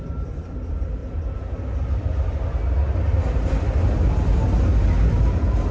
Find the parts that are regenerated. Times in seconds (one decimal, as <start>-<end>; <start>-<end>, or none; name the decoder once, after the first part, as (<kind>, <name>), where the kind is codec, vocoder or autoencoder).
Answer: none